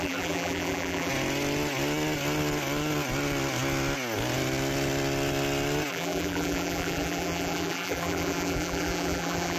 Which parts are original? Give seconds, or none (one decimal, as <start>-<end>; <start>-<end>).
1.1-5.9